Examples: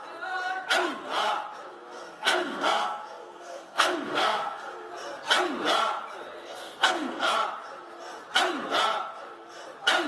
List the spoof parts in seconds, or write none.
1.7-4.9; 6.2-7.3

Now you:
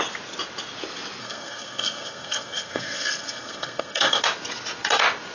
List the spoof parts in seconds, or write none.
1.2-4.2